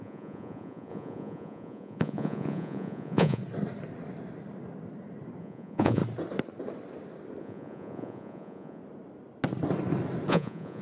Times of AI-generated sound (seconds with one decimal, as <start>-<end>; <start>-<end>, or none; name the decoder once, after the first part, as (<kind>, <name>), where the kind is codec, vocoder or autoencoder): 0.0-3.4 (vocoder, Vocos); 5.4-6.0; 7.4-8.8; 10.3-10.8